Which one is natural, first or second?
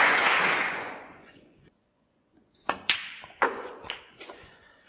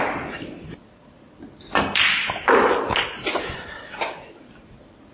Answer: second